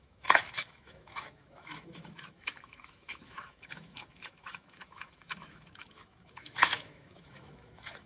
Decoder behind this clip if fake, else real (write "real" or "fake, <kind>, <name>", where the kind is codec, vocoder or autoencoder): fake, autoencoder, DAC-VAE